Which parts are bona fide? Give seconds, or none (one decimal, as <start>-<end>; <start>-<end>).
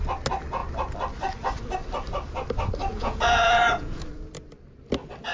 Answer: 0.0-2.9; 4.0-5.3